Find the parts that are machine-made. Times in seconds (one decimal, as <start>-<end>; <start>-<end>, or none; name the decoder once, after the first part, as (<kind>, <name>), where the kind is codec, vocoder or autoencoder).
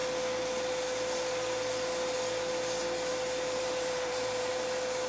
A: 3.6-4.5 (vocoder, BigVGAN v2)